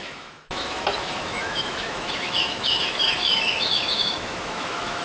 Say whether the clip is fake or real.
fake